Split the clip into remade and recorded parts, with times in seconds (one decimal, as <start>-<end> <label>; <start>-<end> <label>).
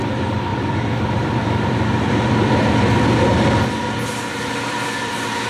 0.0-5.5 remade